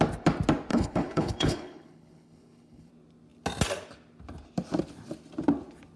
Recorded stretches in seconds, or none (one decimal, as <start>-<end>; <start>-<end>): 0.0-0.7; 2.9-6.0